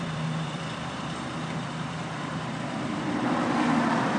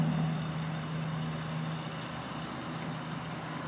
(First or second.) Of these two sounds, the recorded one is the second